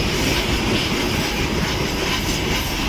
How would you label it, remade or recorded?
recorded